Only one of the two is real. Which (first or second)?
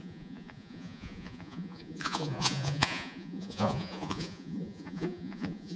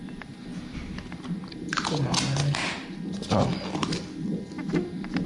second